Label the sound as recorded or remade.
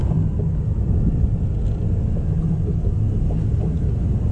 recorded